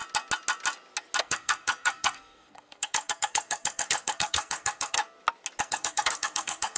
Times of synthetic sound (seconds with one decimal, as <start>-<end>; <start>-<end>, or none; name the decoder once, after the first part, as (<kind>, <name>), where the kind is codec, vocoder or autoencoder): 1.2-5.0 (codec, SNAC); 5.6-6.8